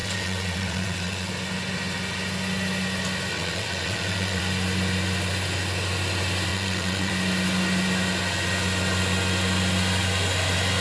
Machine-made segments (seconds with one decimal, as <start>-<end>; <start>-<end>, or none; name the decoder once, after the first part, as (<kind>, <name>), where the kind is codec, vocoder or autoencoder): 0.0-1.3 (vocoder, WaveNeXt); 3.3-4.4; 6.5-7.1